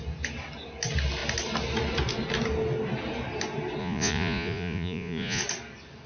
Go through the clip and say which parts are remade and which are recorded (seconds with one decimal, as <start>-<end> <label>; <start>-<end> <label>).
0.0-3.8 recorded; 3.8-5.4 remade; 5.4-6.1 recorded